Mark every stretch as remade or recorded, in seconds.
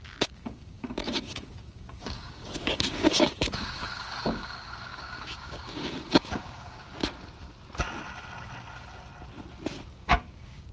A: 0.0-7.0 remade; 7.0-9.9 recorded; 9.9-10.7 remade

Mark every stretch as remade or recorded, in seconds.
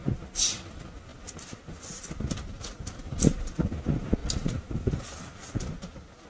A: 0.0-1.1 recorded; 1.1-1.6 remade; 1.6-4.2 recorded; 4.2-4.8 remade; 4.8-6.3 recorded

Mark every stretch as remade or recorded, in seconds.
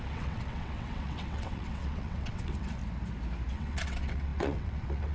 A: 0.0-2.8 remade; 2.8-3.5 recorded; 3.5-5.1 remade